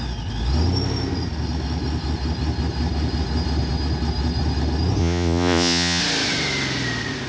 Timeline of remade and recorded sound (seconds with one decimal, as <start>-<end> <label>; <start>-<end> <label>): 0.0-5.0 recorded; 5.0-6.0 remade; 6.0-7.3 recorded

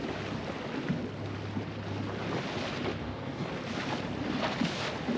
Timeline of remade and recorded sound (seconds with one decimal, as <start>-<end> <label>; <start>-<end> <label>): 0.0-3.0 recorded; 3.0-3.5 remade; 3.5-5.2 recorded

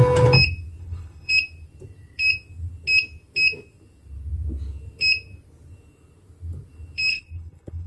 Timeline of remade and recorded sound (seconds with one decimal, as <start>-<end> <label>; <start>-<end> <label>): 0.0-0.8 recorded; 0.8-1.3 remade; 1.3-7.1 recorded; 7.1-7.9 remade

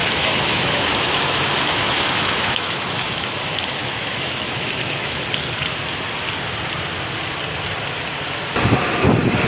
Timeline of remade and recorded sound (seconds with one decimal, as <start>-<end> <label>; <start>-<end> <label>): 0.0-5.2 remade; 5.2-9.5 recorded

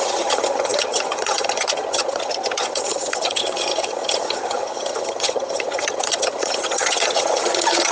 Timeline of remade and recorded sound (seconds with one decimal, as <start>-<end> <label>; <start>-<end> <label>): 0.0-7.9 remade

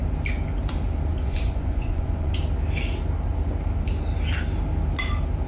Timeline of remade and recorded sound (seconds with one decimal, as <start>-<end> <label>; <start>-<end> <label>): 0.0-1.1 recorded; 1.1-2.4 remade; 2.4-5.5 recorded

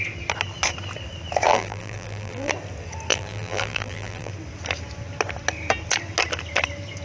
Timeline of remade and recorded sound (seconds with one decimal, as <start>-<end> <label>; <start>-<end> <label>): 0.0-1.5 recorded; 1.5-2.5 remade; 2.5-3.1 recorded; 3.1-4.3 remade; 4.3-7.0 recorded

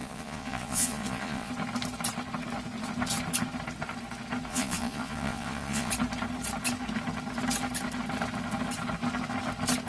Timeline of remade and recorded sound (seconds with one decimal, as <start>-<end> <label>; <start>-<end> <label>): 0.0-1.5 remade; 1.5-4.5 recorded; 4.5-5.9 remade; 5.9-9.9 recorded